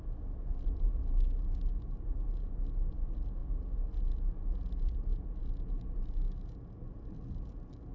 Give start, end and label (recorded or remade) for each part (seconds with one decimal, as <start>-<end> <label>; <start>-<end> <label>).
0.0-7.9 recorded